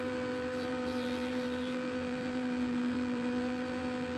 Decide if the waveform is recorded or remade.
remade